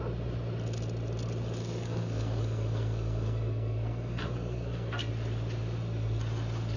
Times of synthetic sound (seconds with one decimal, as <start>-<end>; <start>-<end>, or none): 1.6-5.1